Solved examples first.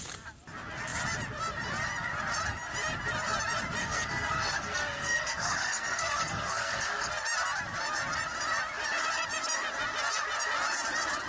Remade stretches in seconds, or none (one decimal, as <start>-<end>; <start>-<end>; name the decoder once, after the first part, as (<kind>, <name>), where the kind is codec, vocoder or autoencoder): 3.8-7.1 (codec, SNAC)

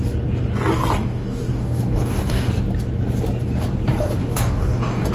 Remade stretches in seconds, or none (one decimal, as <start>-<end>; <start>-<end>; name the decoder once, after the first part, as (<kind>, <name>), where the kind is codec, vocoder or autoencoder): 1.0-2.5 (codec, DAC); 4.2-5.1

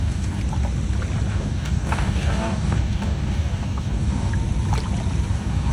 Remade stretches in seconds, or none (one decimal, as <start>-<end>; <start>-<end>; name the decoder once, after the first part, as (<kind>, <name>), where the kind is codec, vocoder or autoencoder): 0.0-0.4 (codec, DAC); 1.3-4.3; 5.3-5.7

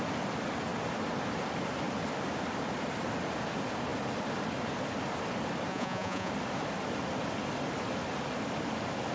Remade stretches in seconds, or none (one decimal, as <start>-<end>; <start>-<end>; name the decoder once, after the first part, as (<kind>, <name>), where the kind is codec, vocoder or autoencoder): 5.7-6.3 (vocoder, Vocos)